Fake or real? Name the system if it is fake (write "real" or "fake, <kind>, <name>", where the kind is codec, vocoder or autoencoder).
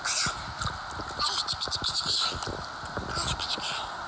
real